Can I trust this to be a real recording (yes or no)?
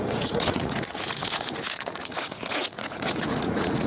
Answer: no